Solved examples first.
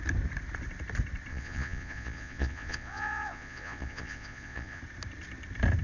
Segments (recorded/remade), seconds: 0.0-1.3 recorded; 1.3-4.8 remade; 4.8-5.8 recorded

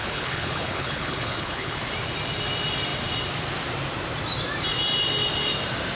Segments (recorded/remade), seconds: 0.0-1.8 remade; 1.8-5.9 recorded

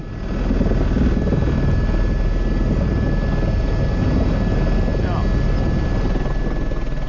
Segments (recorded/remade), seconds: 0.0-7.1 recorded

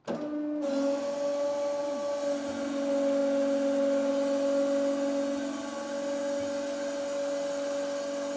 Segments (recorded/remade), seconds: 0.0-8.4 recorded

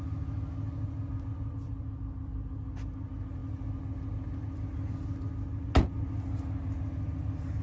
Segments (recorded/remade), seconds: 0.0-7.6 recorded

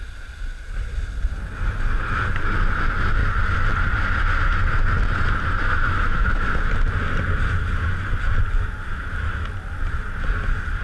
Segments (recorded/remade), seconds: 0.0-5.7 recorded; 5.7-6.7 remade; 6.7-10.8 recorded

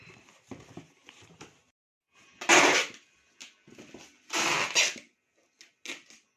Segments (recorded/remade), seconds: 0.0-6.4 recorded